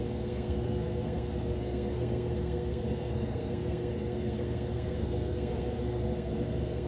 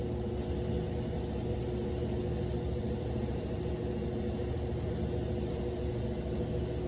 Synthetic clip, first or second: first